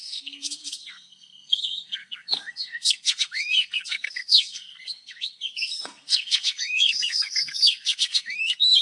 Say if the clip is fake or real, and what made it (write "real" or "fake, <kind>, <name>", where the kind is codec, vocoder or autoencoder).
fake, codec, SNAC